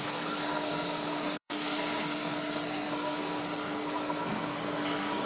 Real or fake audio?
fake